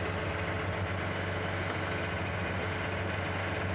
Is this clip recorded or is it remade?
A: recorded